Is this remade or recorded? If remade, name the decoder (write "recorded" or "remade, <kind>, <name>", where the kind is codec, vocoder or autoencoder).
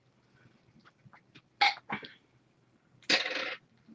recorded